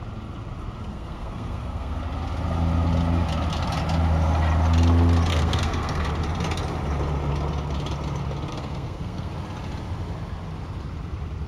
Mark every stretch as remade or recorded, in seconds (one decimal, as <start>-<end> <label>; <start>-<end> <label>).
0.0-0.9 recorded; 0.9-2.0 remade; 2.0-5.3 recorded; 5.3-6.1 remade; 6.1-8.5 recorded; 8.5-9.3 remade; 9.3-11.5 recorded